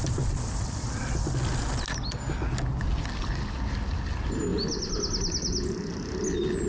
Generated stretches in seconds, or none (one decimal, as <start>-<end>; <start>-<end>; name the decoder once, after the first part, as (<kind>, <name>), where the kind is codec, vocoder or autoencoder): none